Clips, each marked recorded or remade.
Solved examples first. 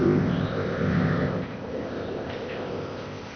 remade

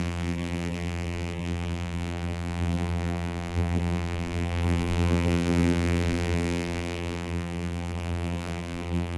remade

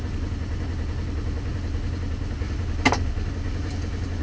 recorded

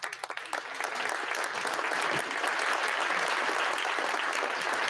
recorded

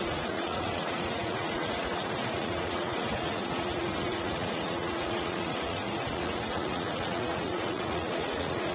remade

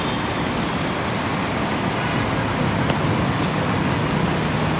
recorded